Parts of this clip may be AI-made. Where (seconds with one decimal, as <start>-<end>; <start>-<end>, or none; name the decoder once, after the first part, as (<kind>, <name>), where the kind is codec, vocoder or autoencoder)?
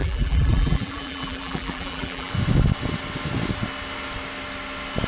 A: 0.0-2.3 (vocoder, BigVGAN v2)